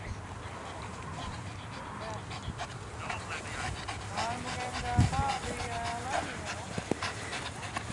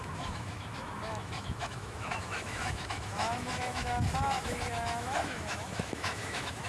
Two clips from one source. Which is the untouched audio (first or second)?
first